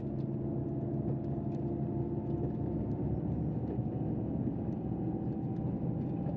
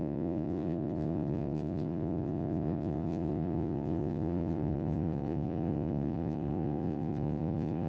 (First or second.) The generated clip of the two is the second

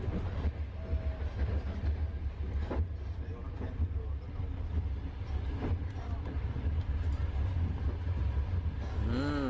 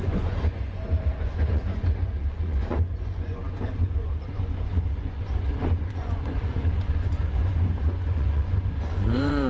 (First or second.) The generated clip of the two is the second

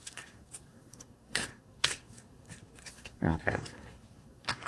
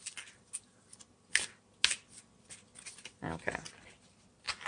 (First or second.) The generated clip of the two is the first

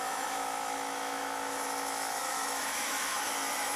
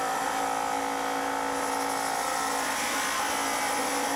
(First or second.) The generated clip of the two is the first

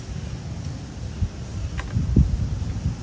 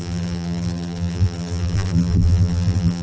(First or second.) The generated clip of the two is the second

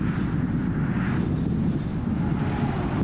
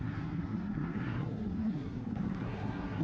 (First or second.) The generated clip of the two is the second